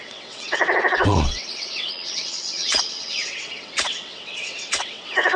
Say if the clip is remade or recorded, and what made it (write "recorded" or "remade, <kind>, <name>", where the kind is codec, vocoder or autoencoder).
remade, vocoder, WaveNeXt